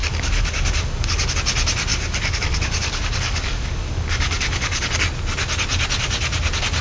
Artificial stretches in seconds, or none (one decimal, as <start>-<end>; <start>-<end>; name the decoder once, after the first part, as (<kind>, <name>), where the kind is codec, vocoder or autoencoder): 0.0-1.3 (codec, DAC); 1.9-4.9